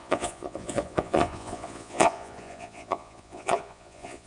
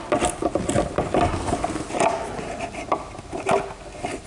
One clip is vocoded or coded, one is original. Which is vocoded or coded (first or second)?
first